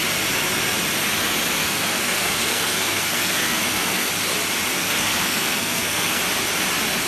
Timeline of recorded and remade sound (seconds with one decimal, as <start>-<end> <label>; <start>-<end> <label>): 0.0-1.6 recorded; 1.6-4.1 remade; 4.1-4.7 recorded; 4.7-6.2 remade; 6.2-7.1 recorded